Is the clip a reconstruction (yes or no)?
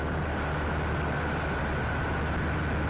no